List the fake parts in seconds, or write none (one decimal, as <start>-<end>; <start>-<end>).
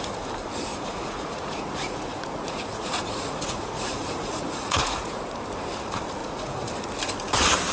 0.7-5.3; 6.2-6.7